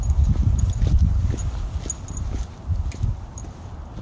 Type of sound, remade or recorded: recorded